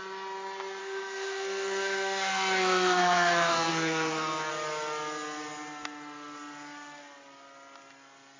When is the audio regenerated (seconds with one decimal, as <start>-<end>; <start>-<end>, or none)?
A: 0.8-4.5